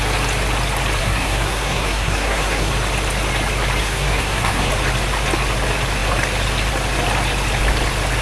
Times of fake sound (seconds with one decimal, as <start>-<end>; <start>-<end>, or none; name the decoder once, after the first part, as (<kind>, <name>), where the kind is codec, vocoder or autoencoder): 1.0-2.7 (codec, SNAC); 3.8-4.7